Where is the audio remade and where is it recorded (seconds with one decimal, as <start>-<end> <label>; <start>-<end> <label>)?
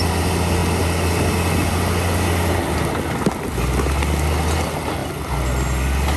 0.0-6.2 recorded